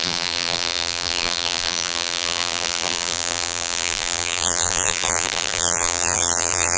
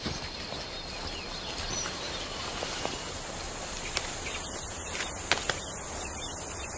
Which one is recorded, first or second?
second